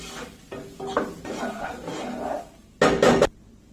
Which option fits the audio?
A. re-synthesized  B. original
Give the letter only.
B